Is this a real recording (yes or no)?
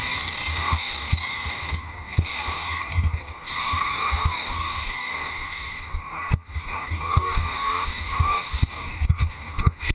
no